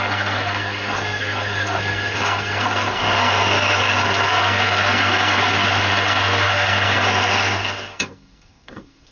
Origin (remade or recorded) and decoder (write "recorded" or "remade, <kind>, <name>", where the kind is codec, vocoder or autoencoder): remade, codec, SNAC